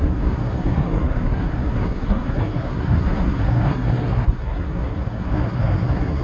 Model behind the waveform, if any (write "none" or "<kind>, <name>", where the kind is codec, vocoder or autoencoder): codec, SNAC